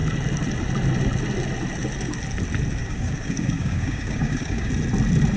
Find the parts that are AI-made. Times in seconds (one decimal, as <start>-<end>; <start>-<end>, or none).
2.8-4.7